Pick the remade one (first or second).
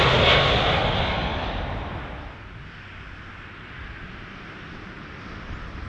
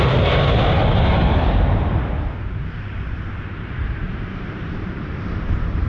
second